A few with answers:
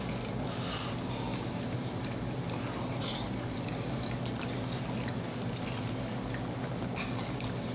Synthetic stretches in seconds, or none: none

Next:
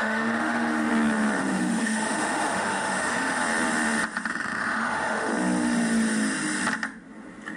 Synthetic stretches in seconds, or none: 0.0-0.9 (autoencoder, DAC-VAE); 1.4-3.4; 4.3-5.3

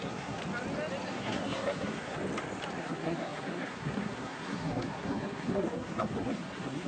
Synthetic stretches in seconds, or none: 0.0-0.4 (codec, SNAC); 1.1-2.2; 2.8-6.9

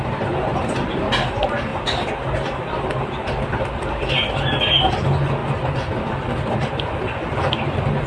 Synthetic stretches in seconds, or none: 1.7-3.9 (vocoder, BigVGAN v2); 5.4-6.7

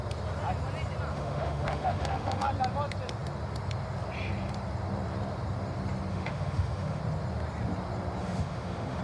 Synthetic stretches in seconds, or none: 1.1-2.5 (autoencoder, DAC-VAE); 6.1-7.0; 8.2-9.0

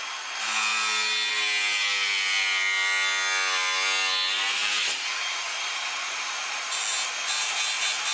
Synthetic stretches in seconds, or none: 4.8-6.8 (vocoder, Vocos)

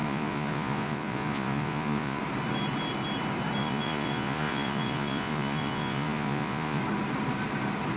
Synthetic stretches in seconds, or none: 0.0-2.2 (vocoder, Vocos); 3.6-6.8

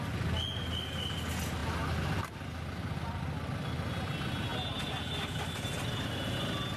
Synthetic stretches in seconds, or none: none